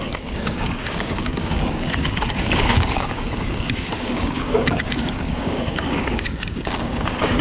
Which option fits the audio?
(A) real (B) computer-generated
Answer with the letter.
B